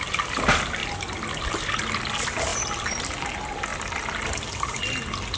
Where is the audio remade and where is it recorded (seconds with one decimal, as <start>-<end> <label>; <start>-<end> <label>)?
0.0-5.4 recorded